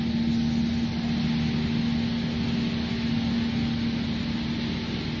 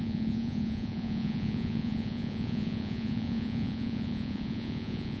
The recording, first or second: first